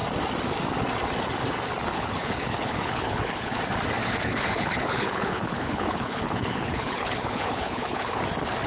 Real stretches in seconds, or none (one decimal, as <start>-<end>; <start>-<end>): 0.0-1.9; 3.6-4.0; 8.2-8.7